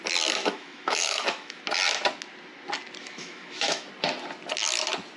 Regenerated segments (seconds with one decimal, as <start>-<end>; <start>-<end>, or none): 0.4-1.6; 3.0-3.9